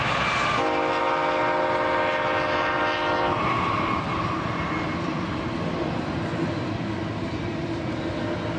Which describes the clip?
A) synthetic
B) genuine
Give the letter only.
B